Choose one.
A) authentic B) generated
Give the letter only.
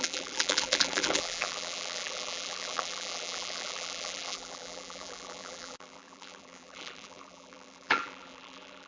B